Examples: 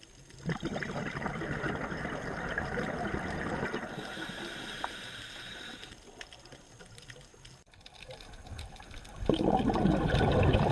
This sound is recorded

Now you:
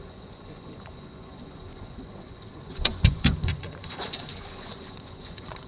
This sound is remade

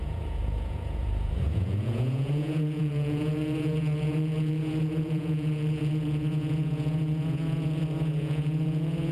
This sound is remade